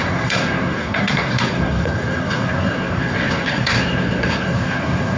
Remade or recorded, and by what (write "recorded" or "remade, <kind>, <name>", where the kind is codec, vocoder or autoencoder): remade, codec, SNAC